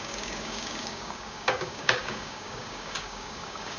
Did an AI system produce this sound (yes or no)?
yes